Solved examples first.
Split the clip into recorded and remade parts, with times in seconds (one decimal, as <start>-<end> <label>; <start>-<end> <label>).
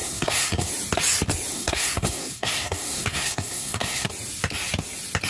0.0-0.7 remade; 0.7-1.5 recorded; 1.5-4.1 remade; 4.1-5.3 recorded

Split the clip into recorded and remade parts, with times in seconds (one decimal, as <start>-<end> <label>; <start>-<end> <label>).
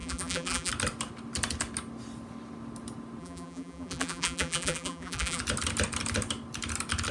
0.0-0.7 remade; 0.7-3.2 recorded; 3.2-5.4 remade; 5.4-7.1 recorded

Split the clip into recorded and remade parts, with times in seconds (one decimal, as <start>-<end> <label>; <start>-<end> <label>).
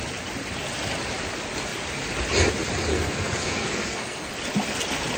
0.0-2.9 recorded; 2.9-4.3 remade; 4.3-5.2 recorded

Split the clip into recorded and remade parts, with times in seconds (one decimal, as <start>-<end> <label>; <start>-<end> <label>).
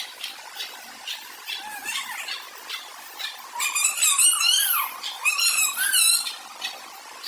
0.0-7.3 recorded